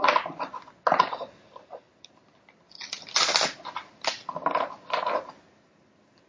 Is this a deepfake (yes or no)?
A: no